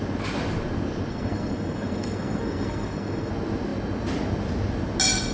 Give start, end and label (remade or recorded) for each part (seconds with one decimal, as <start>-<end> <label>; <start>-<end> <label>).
0.0-1.1 recorded; 1.1-3.3 remade; 3.3-5.3 recorded